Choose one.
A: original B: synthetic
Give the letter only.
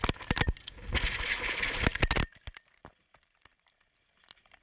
A